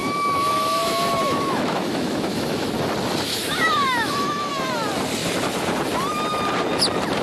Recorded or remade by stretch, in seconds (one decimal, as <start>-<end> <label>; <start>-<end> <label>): 0.0-2.7 remade; 2.7-3.3 recorded; 3.3-4.5 remade; 4.5-7.2 recorded